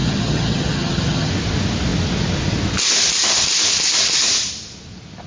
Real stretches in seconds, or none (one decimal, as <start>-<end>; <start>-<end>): 1.3-5.3